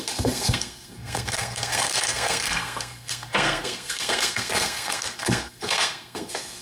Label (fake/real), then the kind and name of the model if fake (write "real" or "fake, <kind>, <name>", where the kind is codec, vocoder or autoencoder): fake, codec, SNAC